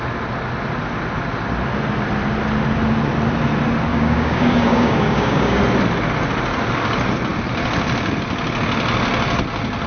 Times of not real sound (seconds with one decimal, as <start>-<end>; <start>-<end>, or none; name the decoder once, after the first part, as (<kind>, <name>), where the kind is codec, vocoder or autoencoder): 3.9-5.6 (codec, DAC)